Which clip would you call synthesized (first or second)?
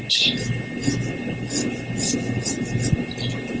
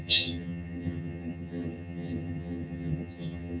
second